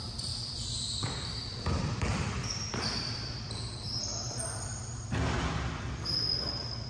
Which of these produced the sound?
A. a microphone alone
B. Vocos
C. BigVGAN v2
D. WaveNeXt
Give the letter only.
C